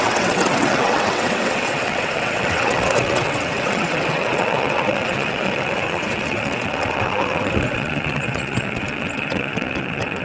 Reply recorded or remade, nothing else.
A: remade